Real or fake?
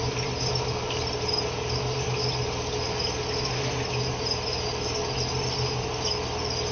real